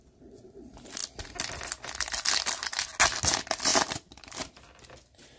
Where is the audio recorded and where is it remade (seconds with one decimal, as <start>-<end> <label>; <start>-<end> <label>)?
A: 0.0-3.7 recorded; 3.7-4.3 remade; 4.3-5.4 recorded